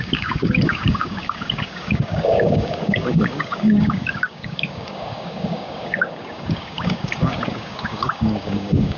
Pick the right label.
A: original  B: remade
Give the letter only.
B